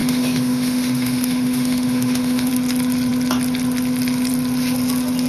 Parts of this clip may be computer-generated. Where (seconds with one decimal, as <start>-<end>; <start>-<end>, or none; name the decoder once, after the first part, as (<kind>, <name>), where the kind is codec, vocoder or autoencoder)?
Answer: 0.0-2.5 (autoencoder, DAC-VAE)